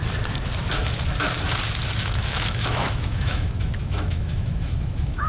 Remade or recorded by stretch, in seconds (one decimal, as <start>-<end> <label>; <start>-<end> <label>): 0.0-2.0 recorded; 2.0-5.3 remade